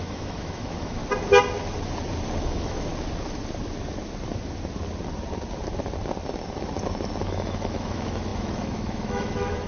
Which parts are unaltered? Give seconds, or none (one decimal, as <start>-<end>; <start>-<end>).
1.0-2.4; 2.9-7.2